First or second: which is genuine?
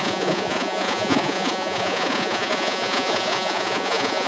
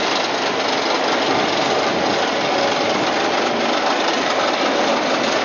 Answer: second